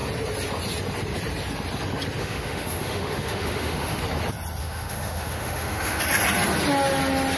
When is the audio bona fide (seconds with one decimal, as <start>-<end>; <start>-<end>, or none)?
0.0-2.2; 4.0-4.6; 6.0-7.4